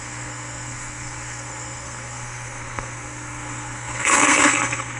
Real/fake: fake